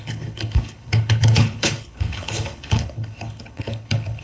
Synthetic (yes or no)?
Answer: yes